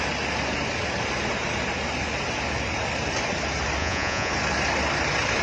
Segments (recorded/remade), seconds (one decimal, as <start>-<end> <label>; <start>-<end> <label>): 0.0-3.8 recorded; 3.8-4.3 remade; 4.3-5.4 recorded